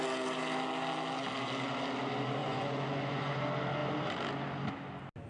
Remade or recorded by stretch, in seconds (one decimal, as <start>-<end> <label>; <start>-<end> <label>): 0.0-2.4 recorded; 2.4-3.4 remade; 3.4-5.3 recorded